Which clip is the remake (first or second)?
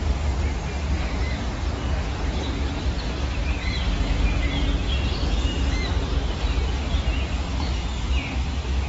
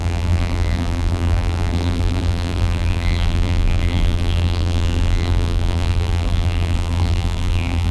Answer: second